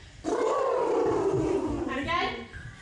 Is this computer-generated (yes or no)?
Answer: yes